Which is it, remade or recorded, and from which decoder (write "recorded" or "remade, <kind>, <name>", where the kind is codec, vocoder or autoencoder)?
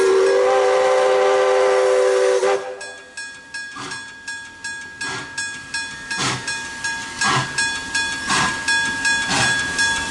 recorded